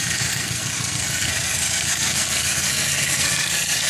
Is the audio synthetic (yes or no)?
yes